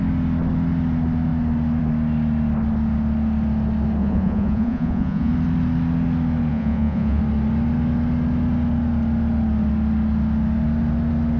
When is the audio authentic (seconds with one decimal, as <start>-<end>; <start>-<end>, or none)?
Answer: 0.0-4.0; 5.3-6.5; 7.2-11.4